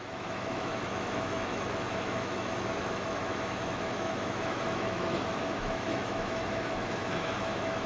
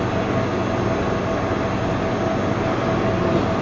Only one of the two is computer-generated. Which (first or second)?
first